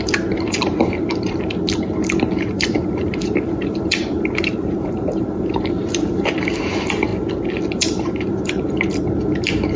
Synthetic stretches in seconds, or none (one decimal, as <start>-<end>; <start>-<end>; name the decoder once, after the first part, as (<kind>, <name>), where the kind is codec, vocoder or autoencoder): 0.0-7.1 (vocoder, BigVGAN v2); 7.7-9.8